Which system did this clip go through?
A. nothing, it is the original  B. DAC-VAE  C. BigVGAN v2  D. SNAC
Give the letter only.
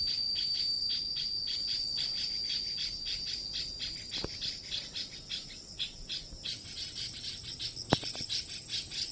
A